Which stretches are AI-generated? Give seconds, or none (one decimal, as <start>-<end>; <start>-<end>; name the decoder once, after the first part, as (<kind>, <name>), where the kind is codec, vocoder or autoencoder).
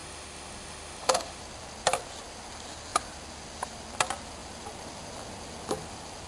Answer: 0.0-1.4 (autoencoder, DAC-VAE)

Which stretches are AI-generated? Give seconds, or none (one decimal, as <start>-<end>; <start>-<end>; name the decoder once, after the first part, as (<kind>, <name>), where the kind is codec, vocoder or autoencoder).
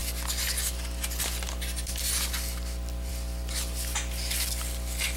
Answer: none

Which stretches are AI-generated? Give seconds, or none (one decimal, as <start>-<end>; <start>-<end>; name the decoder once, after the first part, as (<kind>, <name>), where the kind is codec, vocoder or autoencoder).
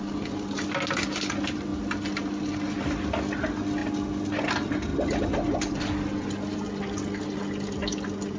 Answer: none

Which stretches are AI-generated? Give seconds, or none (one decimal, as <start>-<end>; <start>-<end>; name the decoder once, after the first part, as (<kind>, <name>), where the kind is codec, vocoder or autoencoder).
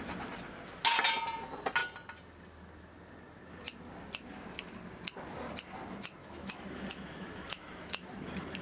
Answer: 6.2-8.1 (autoencoder, DAC-VAE)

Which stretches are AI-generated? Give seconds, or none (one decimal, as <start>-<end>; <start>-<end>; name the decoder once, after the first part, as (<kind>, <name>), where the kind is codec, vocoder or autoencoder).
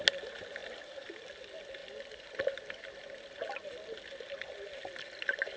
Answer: none